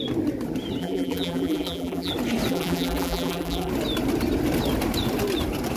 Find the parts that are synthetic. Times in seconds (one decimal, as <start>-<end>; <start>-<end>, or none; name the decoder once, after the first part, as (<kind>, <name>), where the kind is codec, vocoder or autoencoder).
0.8-2.1 (vocoder, BigVGAN v2); 2.5-3.7